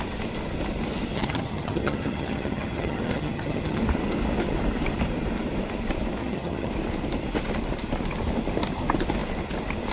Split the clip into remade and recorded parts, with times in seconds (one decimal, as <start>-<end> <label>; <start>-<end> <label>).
0.0-1.1 recorded; 1.1-3.8 remade; 3.8-6.2 recorded; 6.2-6.7 remade; 6.7-9.9 recorded